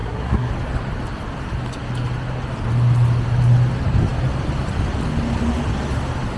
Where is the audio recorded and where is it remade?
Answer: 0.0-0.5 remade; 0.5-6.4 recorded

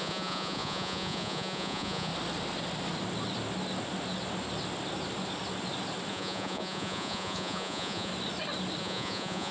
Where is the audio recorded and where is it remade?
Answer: 0.0-2.1 remade; 2.1-6.1 recorded; 6.1-8.1 remade; 8.1-8.8 recorded; 8.8-9.5 remade

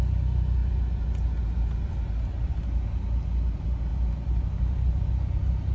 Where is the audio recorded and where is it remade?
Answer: 0.0-5.7 recorded